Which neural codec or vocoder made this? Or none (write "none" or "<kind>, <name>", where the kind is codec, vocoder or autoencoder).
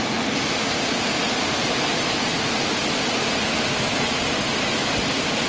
none